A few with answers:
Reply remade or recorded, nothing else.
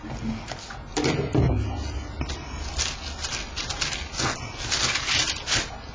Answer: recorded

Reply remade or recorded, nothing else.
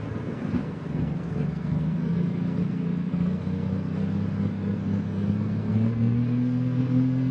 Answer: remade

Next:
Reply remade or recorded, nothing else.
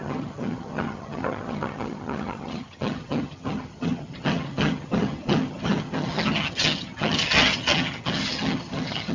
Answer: remade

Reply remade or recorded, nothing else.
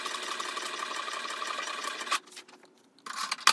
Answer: recorded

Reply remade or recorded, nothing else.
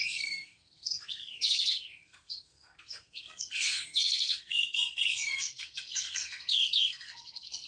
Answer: remade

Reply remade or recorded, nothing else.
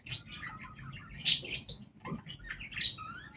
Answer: recorded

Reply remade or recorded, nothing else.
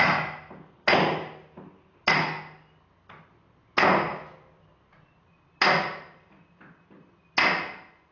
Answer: recorded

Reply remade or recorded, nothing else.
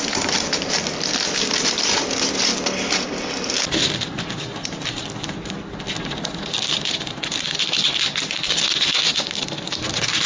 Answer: recorded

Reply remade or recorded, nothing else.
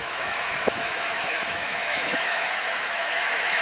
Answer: remade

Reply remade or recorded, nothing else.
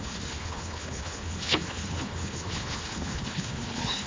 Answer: remade